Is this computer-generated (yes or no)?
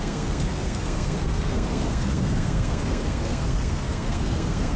yes